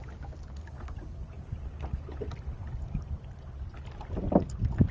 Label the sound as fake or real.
real